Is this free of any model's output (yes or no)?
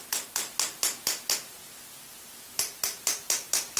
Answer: yes